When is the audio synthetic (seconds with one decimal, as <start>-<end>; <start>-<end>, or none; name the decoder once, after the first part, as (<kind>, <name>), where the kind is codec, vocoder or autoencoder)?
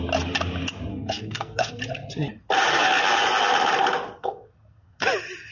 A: 0.9-1.8 (codec, SNAC); 4.2-5.0